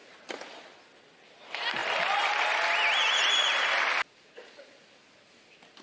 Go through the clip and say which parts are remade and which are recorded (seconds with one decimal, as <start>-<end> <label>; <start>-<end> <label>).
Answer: 0.0-5.8 recorded